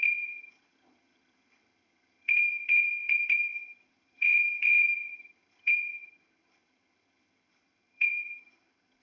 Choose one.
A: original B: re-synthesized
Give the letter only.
B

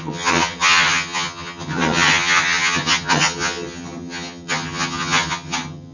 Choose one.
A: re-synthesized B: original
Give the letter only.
A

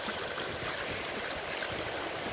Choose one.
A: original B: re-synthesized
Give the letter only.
A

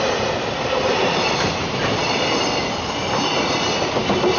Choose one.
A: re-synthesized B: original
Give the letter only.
B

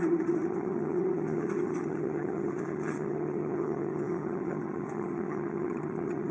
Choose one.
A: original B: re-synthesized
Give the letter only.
B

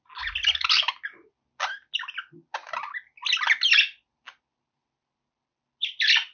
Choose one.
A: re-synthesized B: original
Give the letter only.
B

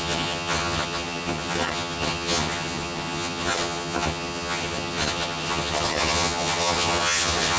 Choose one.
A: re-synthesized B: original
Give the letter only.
A